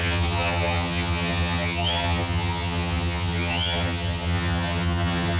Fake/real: fake